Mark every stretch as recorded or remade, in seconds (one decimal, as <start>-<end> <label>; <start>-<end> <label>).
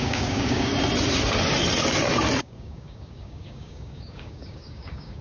0.0-0.7 remade; 0.7-2.4 recorded; 2.4-5.2 remade